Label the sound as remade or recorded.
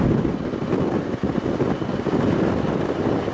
recorded